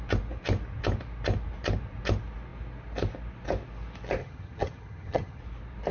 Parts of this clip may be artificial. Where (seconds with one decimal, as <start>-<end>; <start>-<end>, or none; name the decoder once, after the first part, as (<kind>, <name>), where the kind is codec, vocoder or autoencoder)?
4.2-5.4 (vocoder, HiFi-GAN)